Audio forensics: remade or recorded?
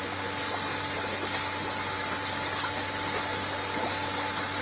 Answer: recorded